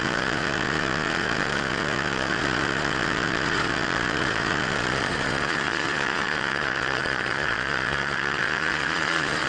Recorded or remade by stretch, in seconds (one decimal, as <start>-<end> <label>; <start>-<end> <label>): 0.0-9.5 remade